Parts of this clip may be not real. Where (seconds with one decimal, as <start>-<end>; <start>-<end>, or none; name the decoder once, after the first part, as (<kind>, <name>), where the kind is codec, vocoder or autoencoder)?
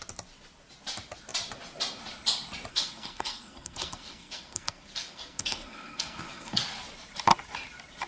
2.7-6.6 (codec, SNAC)